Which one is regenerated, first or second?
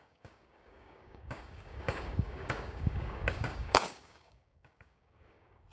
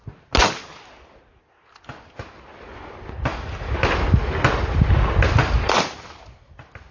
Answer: first